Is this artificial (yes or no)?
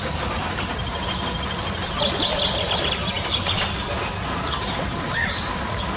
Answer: no